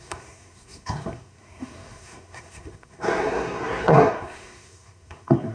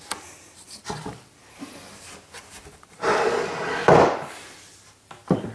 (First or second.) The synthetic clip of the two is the first